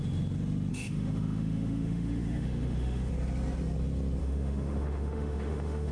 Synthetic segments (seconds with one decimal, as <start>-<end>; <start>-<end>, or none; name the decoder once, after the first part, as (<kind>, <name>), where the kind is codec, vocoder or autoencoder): 0.7-3.1 (autoencoder, DAC-VAE); 4.2-5.9